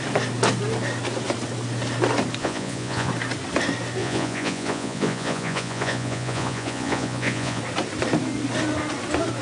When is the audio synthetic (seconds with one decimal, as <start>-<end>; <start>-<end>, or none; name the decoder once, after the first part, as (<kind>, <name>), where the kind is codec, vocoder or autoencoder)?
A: 2.4-3.1 (vocoder, Vocos); 4.0-7.6